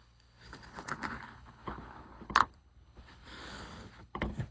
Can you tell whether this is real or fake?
fake